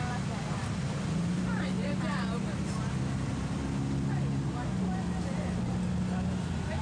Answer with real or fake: real